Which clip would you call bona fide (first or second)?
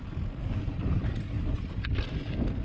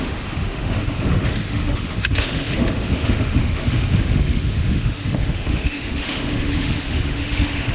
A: first